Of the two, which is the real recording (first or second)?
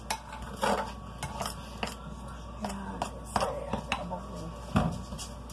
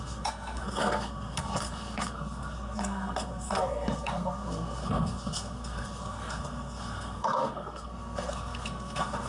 first